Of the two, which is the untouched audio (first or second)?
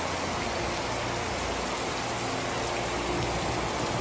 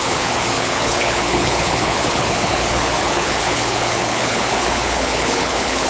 first